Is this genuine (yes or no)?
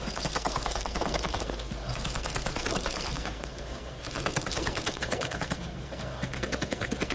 no